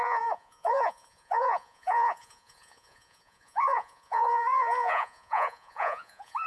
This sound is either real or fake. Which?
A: fake